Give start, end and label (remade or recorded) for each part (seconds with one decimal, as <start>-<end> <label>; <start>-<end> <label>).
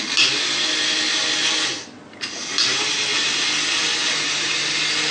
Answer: 0.0-5.1 recorded